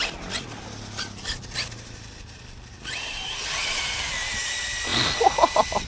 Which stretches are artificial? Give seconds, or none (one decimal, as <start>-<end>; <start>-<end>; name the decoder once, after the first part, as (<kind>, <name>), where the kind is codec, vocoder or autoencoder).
none